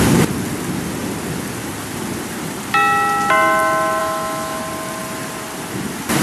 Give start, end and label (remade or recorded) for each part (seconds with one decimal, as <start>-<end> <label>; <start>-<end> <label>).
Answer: 0.0-4.0 recorded; 4.0-4.6 remade; 4.6-6.2 recorded